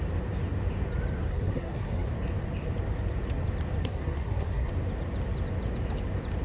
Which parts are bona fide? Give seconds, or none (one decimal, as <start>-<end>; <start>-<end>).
0.0-1.3; 2.1-3.8; 4.7-6.4